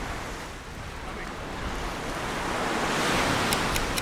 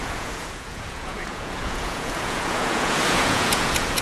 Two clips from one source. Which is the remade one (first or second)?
second